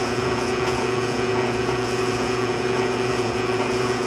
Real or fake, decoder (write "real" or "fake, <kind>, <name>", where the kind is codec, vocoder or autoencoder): fake, vocoder, Vocos